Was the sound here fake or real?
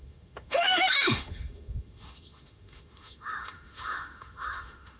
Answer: fake